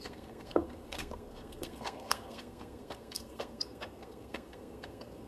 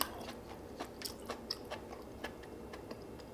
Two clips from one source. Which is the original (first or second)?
second